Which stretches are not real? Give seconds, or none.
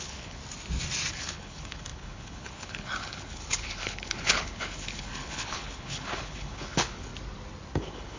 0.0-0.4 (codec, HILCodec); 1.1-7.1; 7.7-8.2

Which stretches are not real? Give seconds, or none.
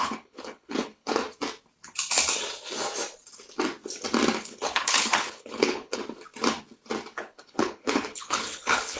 0.0-1.2 (codec, HILCodec); 4.4-6.0; 7.1-9.0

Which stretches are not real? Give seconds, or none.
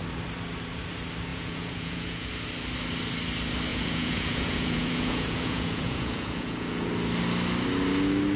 1.3-2.3 (vocoder, Vocos); 3.7-6.9